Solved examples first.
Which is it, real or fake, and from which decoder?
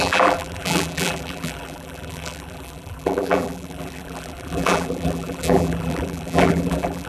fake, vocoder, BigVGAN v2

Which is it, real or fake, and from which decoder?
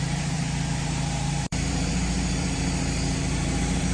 fake, vocoder, BigVGAN v2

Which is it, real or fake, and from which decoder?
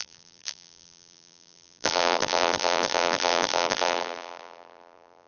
fake, vocoder, BigVGAN v2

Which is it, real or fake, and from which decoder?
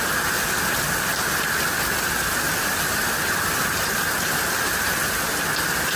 real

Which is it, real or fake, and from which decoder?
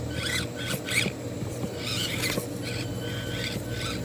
real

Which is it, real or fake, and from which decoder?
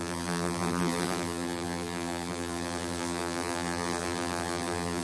fake, vocoder, BigVGAN v2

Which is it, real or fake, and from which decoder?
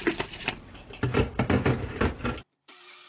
fake, vocoder, BigVGAN v2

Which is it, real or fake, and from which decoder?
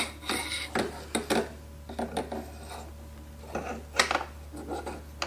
real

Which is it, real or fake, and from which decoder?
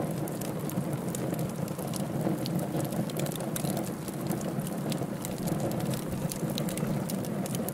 real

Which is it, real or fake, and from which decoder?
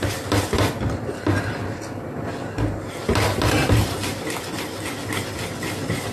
real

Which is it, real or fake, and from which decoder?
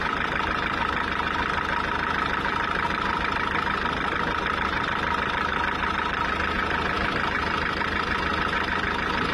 real